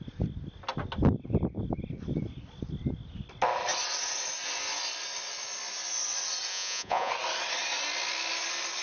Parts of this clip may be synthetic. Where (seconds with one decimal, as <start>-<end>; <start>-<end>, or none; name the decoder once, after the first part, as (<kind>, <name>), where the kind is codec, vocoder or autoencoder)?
6.5-7.1 (vocoder, Vocos)